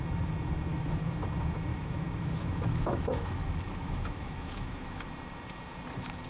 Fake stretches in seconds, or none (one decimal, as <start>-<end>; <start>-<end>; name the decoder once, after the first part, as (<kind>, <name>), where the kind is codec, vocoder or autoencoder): 0.7-1.2 (autoencoder, DAC-VAE); 1.7-5.1